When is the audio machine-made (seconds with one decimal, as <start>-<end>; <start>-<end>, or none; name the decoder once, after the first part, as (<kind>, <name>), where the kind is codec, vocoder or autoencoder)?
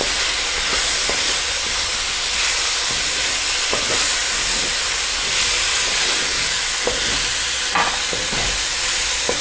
6.2-6.8 (codec, DAC)